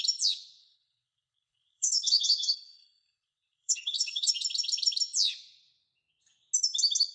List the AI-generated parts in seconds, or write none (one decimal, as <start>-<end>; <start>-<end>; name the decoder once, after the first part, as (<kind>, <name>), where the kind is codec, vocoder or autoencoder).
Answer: 0.6-4.3 (codec, HILCodec)